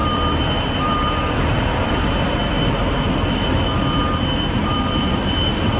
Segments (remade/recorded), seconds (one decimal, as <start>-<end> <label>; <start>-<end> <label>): 0.0-2.4 remade; 2.4-4.6 recorded; 4.6-5.8 remade